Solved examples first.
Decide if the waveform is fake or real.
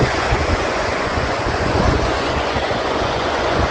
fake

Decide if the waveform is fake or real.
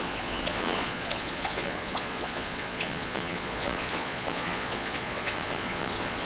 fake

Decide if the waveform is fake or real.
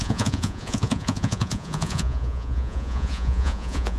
fake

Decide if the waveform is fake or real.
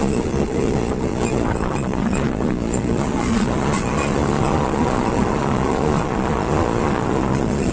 fake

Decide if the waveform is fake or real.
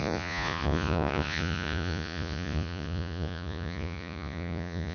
fake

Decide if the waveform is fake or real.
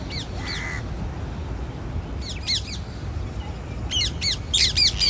real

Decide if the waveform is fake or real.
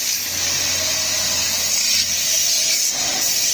real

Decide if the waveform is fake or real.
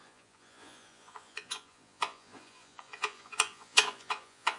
fake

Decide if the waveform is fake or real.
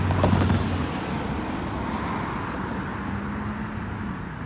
real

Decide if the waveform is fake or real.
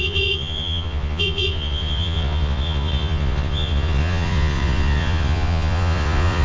fake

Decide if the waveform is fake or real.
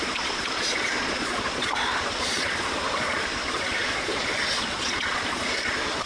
fake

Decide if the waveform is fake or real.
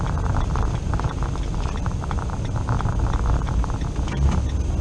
real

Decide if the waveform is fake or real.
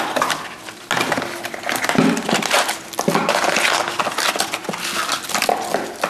real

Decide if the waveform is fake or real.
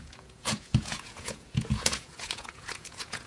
fake